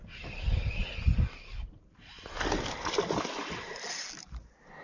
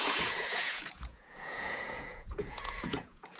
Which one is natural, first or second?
first